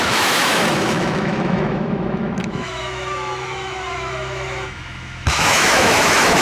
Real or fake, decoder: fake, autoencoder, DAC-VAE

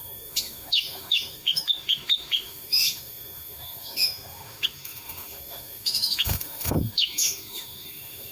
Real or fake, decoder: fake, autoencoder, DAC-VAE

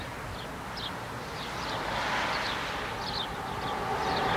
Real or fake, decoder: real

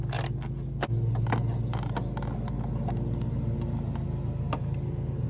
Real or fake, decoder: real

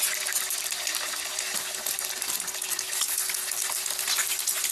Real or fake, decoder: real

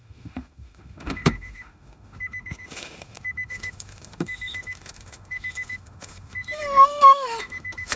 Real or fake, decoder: fake, autoencoder, DAC-VAE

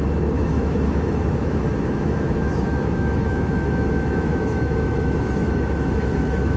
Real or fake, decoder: fake, autoencoder, DAC-VAE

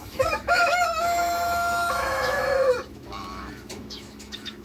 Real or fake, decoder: fake, autoencoder, DAC-VAE